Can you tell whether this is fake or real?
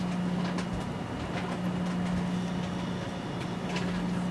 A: real